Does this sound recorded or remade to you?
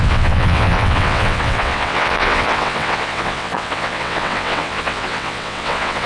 remade